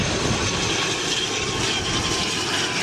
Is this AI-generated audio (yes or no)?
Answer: no